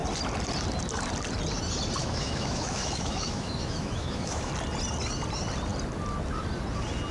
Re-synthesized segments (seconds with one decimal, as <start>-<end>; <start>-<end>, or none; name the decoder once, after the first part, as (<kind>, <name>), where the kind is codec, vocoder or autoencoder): 2.0-4.5 (autoencoder, DAC-VAE)